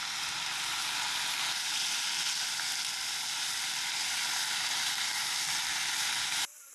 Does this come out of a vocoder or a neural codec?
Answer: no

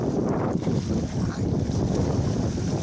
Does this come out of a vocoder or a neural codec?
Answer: no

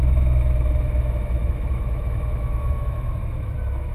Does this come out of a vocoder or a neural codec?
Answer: yes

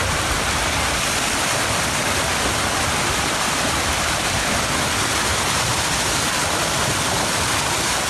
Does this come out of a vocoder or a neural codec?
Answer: no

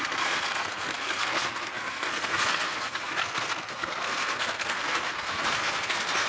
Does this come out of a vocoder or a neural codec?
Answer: yes